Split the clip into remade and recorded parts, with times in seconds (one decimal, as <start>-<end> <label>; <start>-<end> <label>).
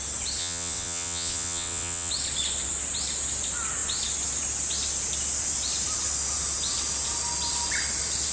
0.0-0.4 recorded; 0.4-2.1 remade; 2.1-8.3 recorded